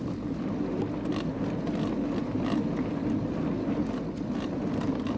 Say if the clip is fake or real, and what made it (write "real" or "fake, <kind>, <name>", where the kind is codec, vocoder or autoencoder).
real